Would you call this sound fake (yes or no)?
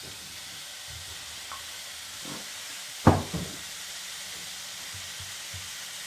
no